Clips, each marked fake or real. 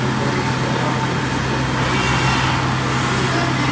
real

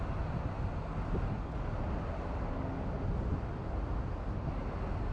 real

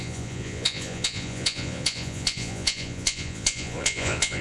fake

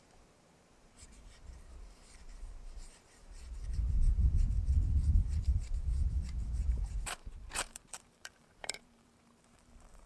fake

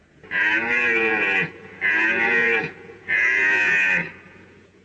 fake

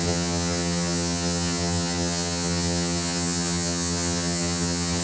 fake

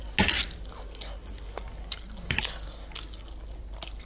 real